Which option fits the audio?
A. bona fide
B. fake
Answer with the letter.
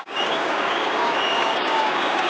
B